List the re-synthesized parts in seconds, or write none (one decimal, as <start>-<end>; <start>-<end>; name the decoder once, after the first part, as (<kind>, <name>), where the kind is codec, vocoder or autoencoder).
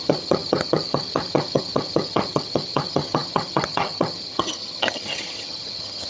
0.0-6.1 (vocoder, HiFi-GAN)